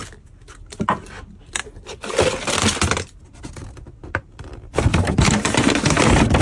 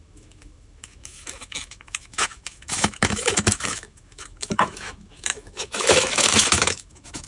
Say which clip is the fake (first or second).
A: second